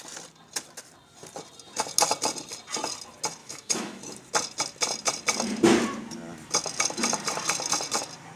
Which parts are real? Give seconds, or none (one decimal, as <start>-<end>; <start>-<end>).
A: 0.0-3.4; 4.0-8.4